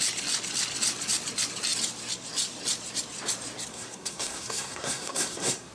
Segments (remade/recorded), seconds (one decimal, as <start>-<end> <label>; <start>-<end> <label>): 0.0-3.7 recorded; 3.7-5.7 remade